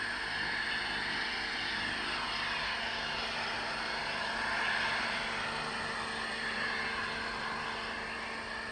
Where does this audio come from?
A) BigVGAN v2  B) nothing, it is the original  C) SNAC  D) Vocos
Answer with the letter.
B